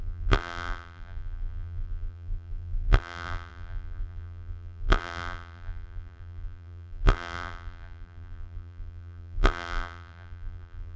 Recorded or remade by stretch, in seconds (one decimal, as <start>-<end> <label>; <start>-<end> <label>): 0.0-11.0 remade